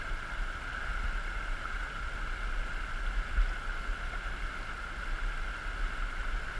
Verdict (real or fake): real